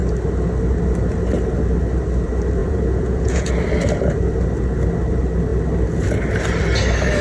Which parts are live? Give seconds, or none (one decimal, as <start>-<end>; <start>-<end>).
0.0-2.6; 3.5-7.2